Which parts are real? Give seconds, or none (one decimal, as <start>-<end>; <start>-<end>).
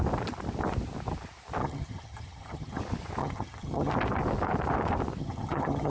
0.0-1.6; 2.8-3.2; 3.9-5.2